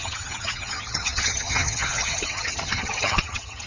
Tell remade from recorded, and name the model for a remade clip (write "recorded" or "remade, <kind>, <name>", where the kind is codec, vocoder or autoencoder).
remade, vocoder, HiFi-GAN